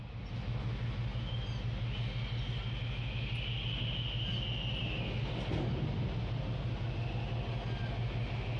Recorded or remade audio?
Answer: recorded